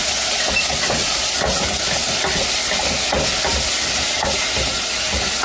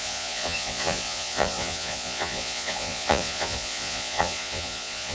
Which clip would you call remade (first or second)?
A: second